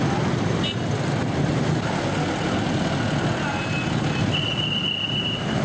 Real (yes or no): yes